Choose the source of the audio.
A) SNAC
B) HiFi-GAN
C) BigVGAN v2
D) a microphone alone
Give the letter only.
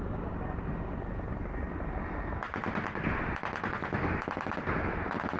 D